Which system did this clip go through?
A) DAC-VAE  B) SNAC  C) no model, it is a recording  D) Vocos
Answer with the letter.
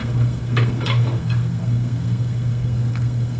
B